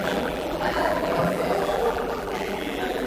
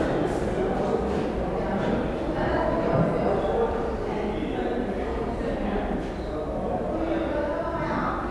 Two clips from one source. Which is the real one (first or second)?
second